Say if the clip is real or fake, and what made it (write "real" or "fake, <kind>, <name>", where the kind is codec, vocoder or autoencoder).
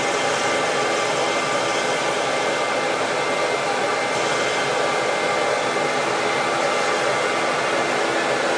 real